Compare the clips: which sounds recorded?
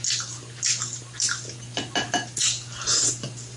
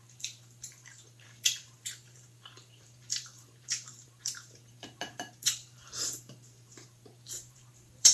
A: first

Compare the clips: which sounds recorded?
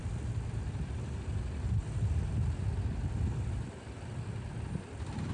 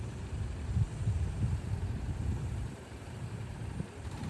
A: first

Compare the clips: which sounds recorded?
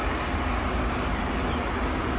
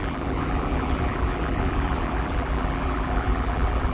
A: first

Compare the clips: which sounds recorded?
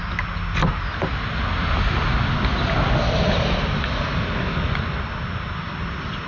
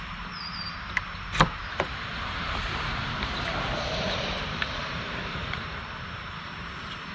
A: first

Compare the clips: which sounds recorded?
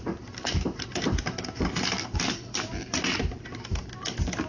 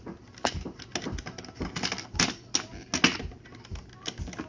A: second